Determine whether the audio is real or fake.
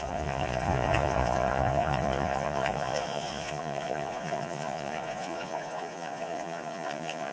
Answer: fake